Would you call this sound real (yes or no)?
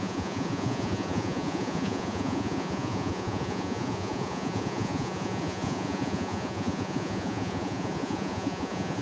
no